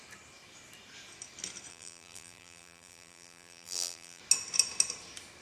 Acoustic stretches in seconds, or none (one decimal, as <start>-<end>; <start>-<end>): 0.0-1.7; 4.2-5.4